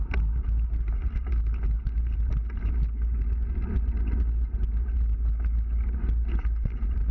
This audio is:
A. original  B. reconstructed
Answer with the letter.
A